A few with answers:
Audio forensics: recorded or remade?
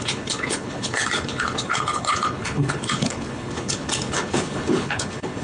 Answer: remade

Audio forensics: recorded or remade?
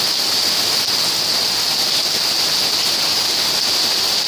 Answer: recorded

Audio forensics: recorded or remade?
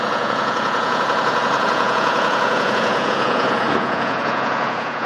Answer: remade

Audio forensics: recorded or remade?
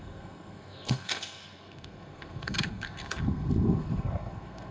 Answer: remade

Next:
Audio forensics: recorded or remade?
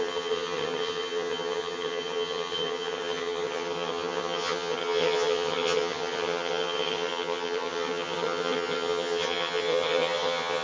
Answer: remade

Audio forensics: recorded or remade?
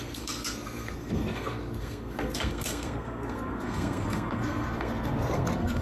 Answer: remade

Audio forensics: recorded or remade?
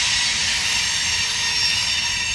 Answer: recorded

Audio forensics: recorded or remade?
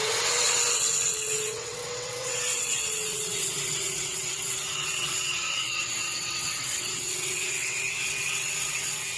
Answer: remade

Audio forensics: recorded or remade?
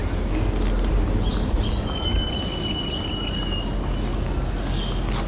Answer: recorded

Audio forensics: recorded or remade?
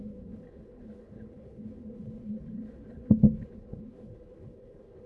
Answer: remade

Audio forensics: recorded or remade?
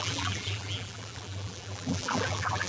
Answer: remade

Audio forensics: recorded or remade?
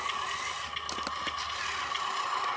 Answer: recorded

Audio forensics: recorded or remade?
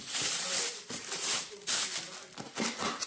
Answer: recorded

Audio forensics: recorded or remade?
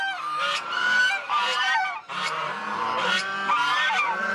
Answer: remade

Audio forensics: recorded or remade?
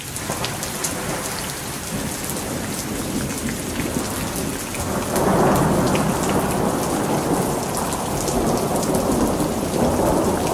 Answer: recorded